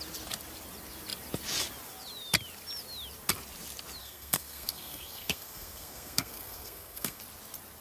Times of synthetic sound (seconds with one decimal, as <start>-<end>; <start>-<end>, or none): 4.0-7.2